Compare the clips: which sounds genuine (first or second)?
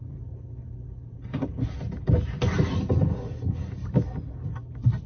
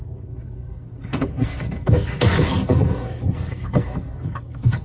first